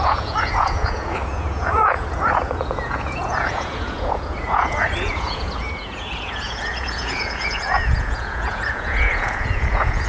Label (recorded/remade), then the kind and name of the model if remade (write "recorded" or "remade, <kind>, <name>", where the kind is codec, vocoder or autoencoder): remade, vocoder, Vocos